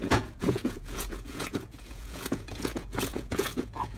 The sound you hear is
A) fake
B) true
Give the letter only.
A